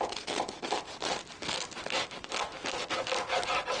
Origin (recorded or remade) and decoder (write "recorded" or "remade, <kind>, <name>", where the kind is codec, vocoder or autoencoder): recorded